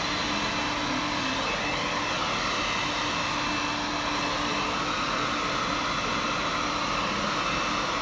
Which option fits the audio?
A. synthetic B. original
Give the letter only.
B